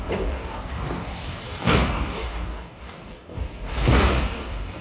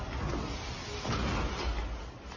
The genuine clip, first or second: second